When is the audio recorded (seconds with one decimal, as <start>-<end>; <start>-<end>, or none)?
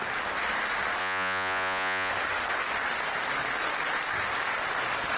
0.0-1.0; 2.1-5.2